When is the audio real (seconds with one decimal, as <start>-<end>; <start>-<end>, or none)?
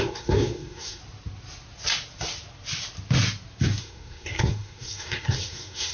1.0-3.8